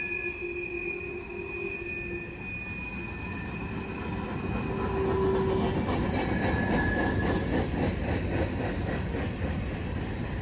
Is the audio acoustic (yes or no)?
yes